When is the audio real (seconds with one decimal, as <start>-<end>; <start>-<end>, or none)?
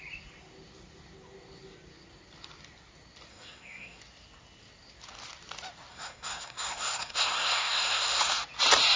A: 0.0-3.3; 4.0-5.9; 8.2-9.0